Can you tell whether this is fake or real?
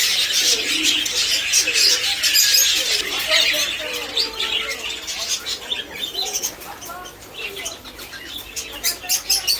real